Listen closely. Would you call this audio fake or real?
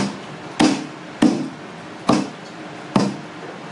real